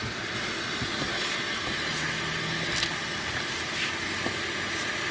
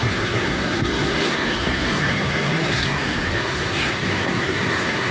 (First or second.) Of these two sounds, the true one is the first